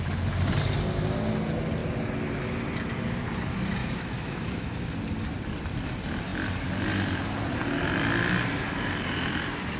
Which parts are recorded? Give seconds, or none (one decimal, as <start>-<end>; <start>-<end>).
0.0-3.8; 4.9-9.8